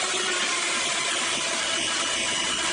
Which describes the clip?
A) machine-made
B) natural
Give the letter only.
B